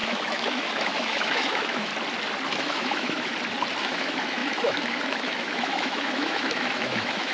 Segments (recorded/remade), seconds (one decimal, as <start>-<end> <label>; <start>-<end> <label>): 0.0-1.9 remade; 1.9-2.5 recorded; 2.5-3.3 remade; 3.3-3.8 recorded; 3.8-7.3 remade